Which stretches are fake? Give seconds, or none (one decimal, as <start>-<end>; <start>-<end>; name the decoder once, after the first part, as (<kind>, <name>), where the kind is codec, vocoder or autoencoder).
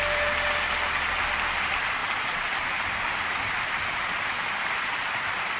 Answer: none